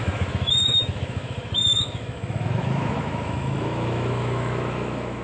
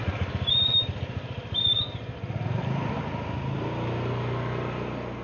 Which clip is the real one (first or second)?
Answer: second